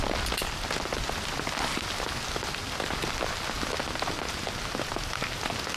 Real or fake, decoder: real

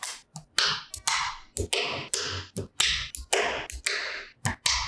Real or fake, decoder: real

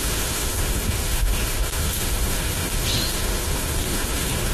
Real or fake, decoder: fake, autoencoder, DAC-VAE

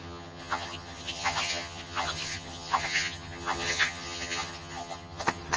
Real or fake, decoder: fake, vocoder, HiFi-GAN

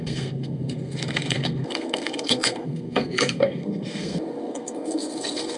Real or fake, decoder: fake, codec, SNAC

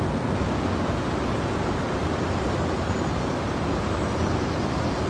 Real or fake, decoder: real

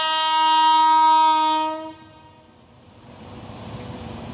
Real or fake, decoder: real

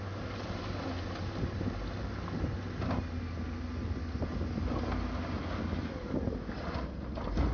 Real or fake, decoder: real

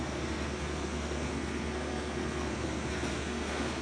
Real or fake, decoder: fake, codec, SNAC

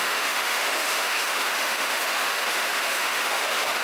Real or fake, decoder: fake, autoencoder, DAC-VAE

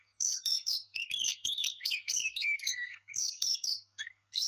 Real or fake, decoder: fake, codec, SNAC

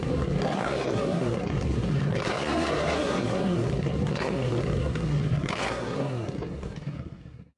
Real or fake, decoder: fake, codec, SNAC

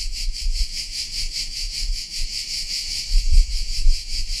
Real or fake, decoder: fake, autoencoder, DAC-VAE